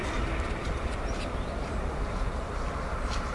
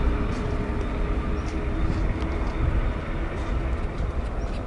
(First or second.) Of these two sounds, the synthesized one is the first